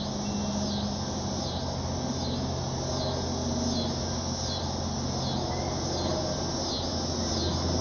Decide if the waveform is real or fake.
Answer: real